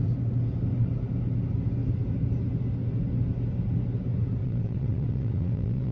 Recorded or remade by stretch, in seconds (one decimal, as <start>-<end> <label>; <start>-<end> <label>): 0.0-4.4 recorded; 4.4-5.9 remade